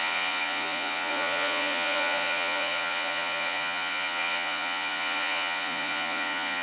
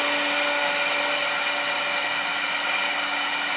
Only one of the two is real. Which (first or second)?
second